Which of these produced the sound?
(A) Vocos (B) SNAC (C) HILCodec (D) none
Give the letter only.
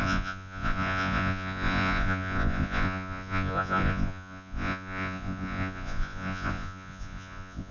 A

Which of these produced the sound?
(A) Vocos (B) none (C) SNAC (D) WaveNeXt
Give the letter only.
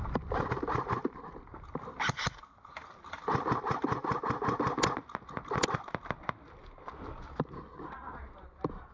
B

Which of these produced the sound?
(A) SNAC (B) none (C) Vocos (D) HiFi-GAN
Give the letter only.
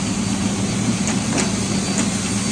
B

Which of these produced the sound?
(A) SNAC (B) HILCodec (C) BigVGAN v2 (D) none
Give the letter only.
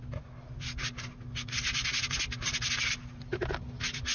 D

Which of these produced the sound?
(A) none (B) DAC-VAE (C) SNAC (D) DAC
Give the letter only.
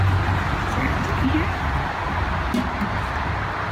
A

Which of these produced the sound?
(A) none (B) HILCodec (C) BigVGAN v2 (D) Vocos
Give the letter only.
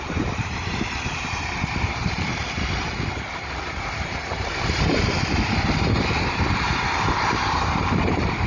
C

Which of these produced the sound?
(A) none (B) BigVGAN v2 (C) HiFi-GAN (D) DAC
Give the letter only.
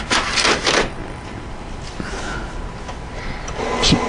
A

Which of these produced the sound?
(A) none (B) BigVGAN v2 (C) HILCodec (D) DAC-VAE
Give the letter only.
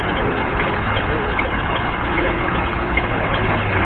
C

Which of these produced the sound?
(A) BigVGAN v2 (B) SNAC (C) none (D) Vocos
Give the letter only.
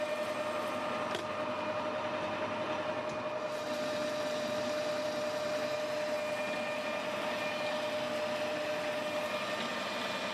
C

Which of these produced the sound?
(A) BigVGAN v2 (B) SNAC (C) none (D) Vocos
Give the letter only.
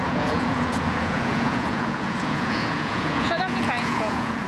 D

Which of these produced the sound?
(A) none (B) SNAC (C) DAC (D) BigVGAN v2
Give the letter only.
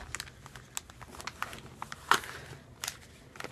A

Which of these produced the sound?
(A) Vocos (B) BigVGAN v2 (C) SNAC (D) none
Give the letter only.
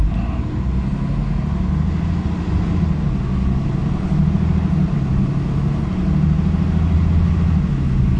D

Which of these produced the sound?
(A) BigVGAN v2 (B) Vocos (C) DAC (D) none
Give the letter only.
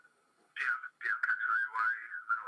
C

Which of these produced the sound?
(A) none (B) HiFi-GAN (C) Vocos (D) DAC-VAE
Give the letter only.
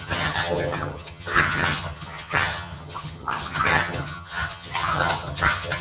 B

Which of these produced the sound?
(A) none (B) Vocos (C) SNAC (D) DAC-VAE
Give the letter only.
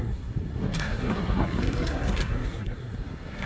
C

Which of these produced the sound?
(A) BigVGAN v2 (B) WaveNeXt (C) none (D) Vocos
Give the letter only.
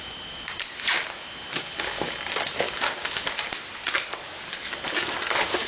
C